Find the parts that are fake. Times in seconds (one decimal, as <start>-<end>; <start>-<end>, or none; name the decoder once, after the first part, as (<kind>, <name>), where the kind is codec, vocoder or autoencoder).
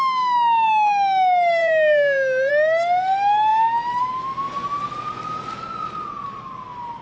1.6-2.5 (vocoder, BigVGAN v2)